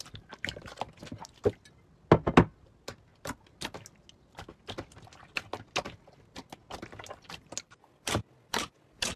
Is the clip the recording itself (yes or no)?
yes